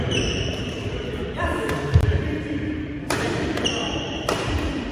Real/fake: fake